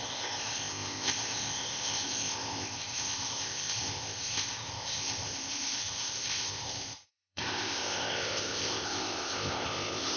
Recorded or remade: remade